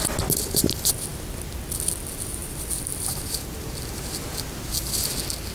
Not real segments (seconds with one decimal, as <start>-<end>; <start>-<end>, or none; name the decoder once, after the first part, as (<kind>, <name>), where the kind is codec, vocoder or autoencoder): 2.4-3.9 (vocoder, BigVGAN v2)